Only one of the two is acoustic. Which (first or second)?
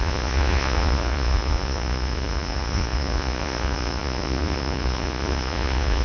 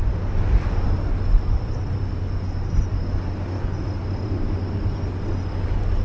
second